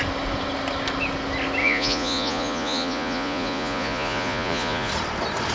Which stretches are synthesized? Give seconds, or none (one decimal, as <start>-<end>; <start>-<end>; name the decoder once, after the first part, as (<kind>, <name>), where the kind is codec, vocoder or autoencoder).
1.6-4.9 (vocoder, Vocos)